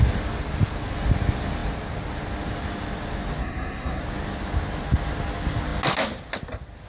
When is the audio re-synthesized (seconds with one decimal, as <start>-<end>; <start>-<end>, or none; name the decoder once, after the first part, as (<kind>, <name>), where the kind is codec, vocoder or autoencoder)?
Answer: 3.4-4.0 (codec, SNAC)